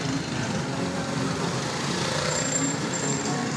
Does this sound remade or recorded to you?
remade